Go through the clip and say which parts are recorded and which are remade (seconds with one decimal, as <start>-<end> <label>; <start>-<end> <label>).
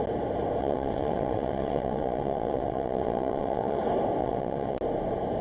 0.0-0.6 recorded; 0.6-3.8 remade; 3.8-4.2 recorded; 4.2-4.8 remade; 4.8-5.4 recorded